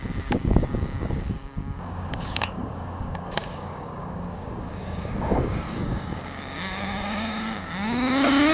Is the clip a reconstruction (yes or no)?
yes